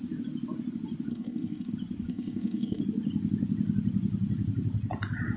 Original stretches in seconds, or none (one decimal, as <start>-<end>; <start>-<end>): 0.0-1.1; 1.7-2.1; 2.8-5.4